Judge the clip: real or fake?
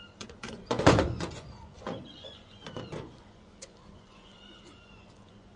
fake